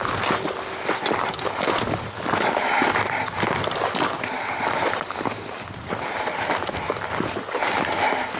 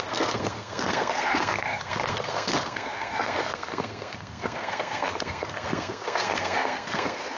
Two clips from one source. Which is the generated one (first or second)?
second